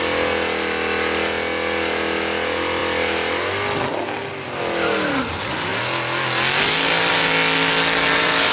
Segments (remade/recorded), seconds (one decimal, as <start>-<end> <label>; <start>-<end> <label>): 0.0-8.5 recorded